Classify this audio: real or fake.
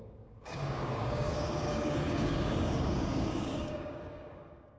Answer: fake